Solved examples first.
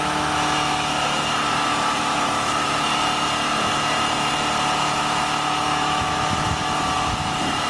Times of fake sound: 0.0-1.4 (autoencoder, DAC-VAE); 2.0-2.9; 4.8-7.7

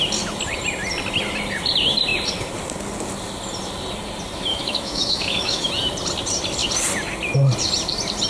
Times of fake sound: 4.5-5.7 (autoencoder, DAC-VAE)